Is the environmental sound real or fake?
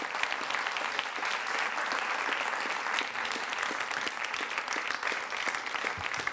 real